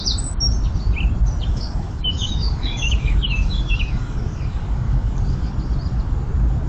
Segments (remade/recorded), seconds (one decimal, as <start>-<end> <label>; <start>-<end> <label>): 0.0-1.5 recorded; 1.5-5.5 remade; 5.5-6.7 recorded